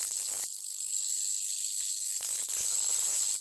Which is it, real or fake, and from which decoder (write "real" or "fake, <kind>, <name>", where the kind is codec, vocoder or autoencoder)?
fake, codec, HILCodec